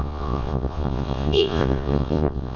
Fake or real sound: fake